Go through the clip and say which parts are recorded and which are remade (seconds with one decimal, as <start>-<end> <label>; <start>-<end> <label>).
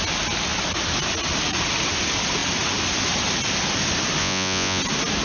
0.0-4.2 recorded; 4.2-4.8 remade; 4.8-5.2 recorded